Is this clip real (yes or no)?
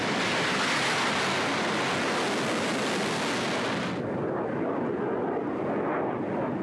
yes